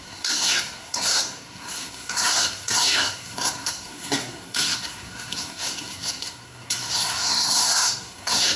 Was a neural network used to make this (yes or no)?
yes